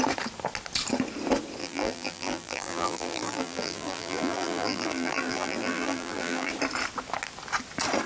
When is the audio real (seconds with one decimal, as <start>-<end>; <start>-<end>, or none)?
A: 0.0-1.6; 6.5-8.1